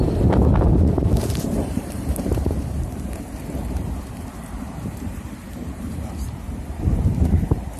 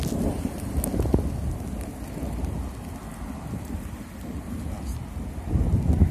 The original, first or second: second